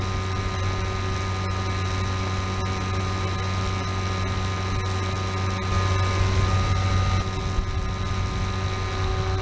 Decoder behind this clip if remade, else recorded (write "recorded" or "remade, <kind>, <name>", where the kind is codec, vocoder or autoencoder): recorded